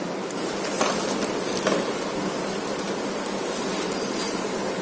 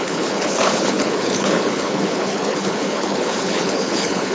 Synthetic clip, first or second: second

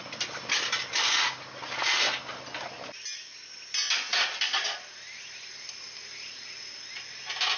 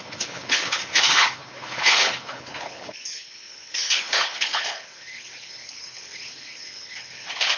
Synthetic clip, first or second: second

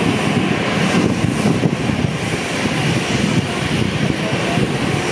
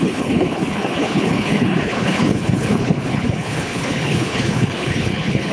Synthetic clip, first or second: second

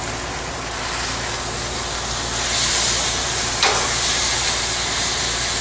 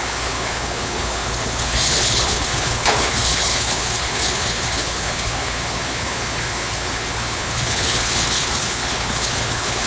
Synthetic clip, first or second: second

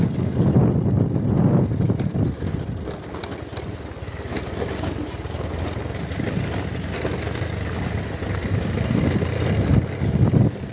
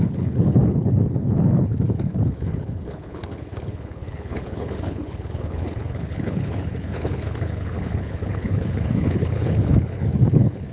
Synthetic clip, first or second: second